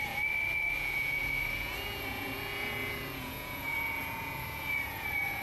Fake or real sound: fake